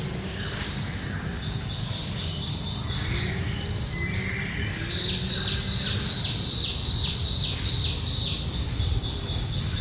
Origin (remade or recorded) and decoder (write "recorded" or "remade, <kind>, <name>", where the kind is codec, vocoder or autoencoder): recorded